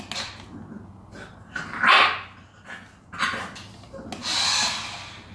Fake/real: real